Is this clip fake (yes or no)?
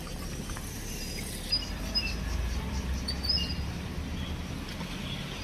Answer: no